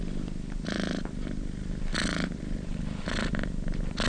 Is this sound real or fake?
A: real